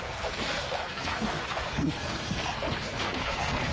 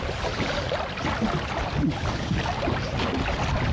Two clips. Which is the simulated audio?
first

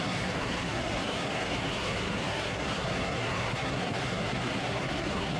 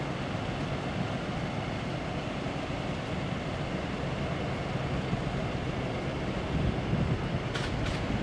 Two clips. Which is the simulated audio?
first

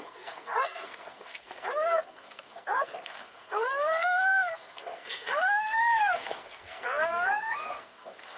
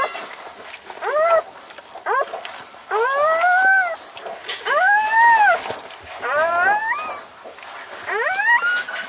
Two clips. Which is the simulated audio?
first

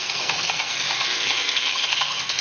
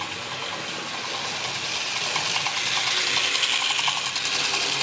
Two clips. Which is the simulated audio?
first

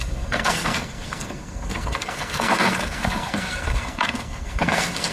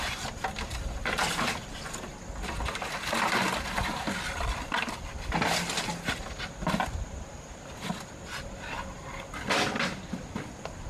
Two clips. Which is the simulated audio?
first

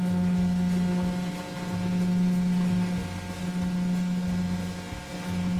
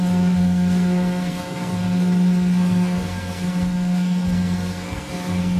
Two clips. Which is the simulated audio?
second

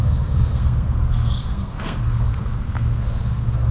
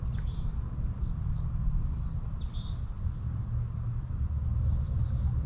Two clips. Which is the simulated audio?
first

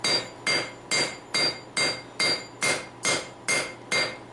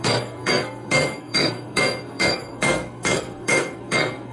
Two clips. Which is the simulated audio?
second